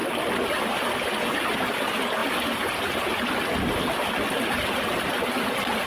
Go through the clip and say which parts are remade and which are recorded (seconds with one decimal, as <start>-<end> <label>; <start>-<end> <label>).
0.0-5.9 recorded